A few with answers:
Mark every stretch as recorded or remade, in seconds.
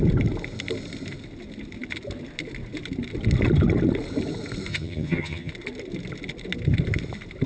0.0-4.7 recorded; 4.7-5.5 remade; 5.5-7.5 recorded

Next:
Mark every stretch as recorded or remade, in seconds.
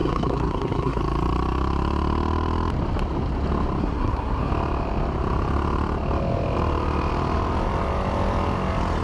0.0-1.0 remade; 1.0-3.8 recorded; 3.8-4.5 remade; 4.5-9.0 recorded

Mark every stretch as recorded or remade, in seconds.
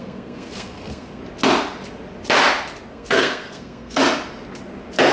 0.0-1.2 remade; 1.2-2.9 recorded; 2.9-4.0 remade; 4.0-5.1 recorded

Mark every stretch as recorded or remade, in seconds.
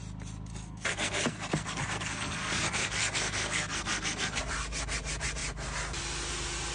0.0-0.5 recorded; 0.5-4.4 remade; 4.4-6.7 recorded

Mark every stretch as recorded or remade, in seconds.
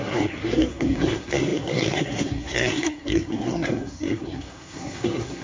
0.0-5.4 remade